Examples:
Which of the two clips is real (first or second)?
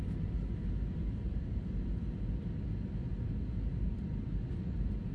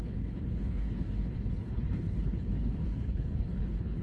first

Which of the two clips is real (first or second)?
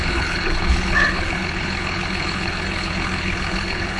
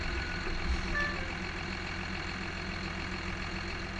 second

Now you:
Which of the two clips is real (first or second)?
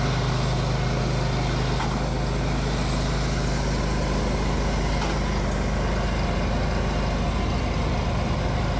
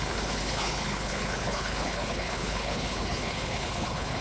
first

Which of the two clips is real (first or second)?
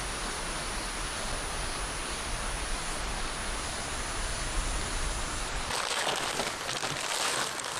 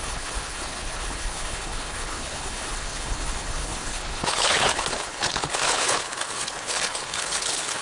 first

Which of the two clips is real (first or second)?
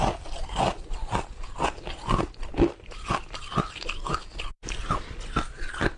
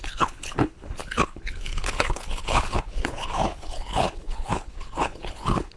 first